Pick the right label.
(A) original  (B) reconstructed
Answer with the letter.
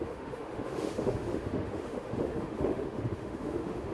B